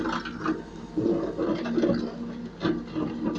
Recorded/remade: recorded